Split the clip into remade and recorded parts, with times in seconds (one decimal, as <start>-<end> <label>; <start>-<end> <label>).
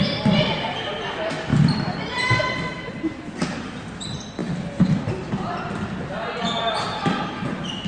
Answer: 0.0-1.5 recorded; 1.5-2.9 remade; 2.9-7.9 recorded